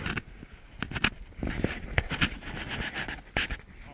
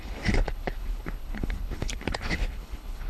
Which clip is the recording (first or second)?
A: first